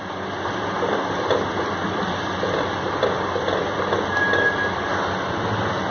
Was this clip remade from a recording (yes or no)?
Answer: no